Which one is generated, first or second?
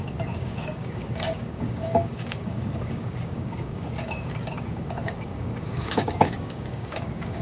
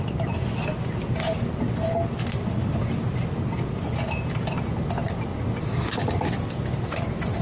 first